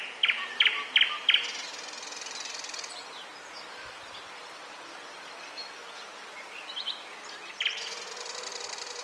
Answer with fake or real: fake